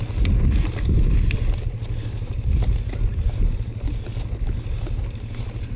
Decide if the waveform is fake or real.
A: real